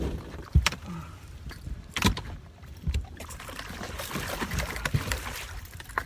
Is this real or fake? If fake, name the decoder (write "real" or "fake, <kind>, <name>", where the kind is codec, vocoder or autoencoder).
fake, vocoder, BigVGAN v2